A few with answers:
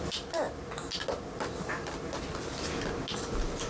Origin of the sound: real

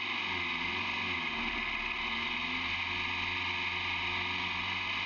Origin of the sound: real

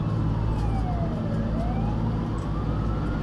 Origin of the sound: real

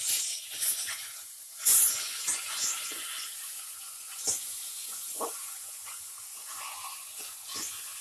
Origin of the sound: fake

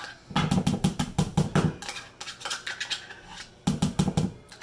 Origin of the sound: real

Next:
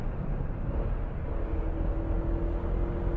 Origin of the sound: real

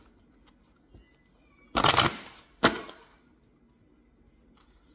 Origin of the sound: real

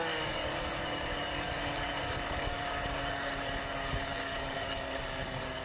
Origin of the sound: fake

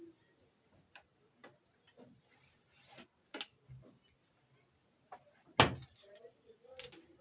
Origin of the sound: real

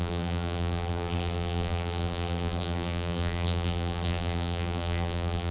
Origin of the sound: fake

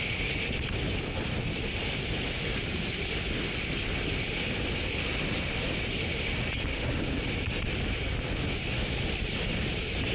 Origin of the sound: real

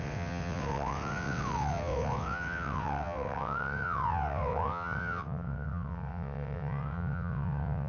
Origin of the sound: fake